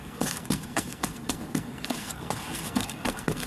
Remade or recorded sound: remade